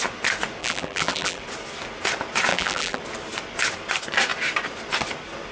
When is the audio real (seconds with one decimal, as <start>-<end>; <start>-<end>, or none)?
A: 0.0-0.6; 1.4-2.5; 3.0-5.5